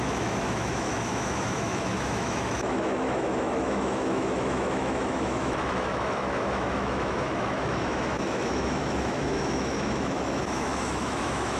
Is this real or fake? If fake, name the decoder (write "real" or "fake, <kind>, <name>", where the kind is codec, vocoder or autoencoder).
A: fake, autoencoder, DAC-VAE